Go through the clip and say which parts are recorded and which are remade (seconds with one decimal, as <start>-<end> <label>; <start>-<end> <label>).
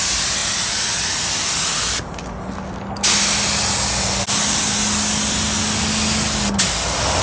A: 0.0-7.2 recorded